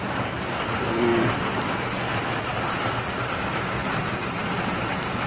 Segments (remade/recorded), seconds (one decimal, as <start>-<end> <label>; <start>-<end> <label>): 0.0-5.3 recorded